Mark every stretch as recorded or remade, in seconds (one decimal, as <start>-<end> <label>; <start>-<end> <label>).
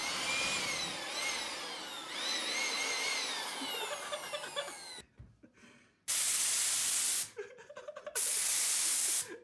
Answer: 0.0-9.4 recorded